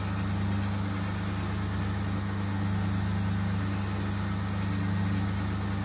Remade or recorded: recorded